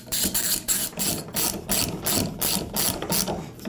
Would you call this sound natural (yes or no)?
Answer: no